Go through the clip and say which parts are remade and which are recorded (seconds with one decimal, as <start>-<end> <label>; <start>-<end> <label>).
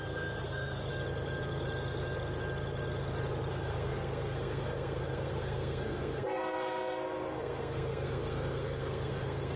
0.0-0.9 remade; 0.9-3.5 recorded; 3.5-9.6 remade